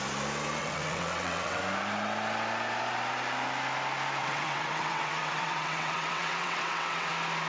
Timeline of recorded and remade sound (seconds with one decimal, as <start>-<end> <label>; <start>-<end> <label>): 0.0-0.6 recorded; 0.6-1.6 remade; 1.6-4.2 recorded; 4.2-7.1 remade; 7.1-7.5 recorded